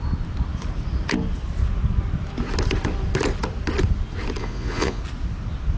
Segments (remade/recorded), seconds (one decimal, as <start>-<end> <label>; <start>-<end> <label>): 0.0-4.4 recorded; 4.4-5.0 remade; 5.0-5.8 recorded